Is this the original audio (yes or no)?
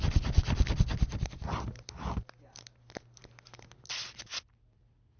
yes